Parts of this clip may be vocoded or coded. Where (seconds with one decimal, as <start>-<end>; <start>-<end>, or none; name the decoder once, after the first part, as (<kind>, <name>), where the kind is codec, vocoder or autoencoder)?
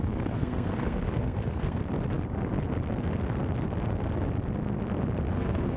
0.0-1.8 (codec, SNAC); 5.3-5.8